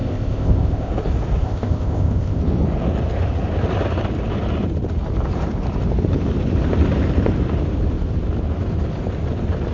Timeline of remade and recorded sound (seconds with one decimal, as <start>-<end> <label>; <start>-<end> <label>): 0.0-0.9 remade; 0.9-1.4 recorded; 1.4-2.4 remade; 2.4-9.7 recorded